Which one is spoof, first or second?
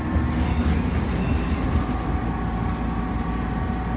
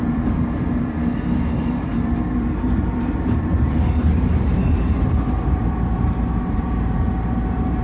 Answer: second